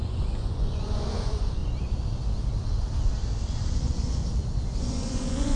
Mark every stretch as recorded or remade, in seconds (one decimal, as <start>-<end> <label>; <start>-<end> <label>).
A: 0.0-1.6 remade; 1.6-3.7 recorded; 3.7-4.2 remade; 4.2-4.8 recorded; 4.8-5.6 remade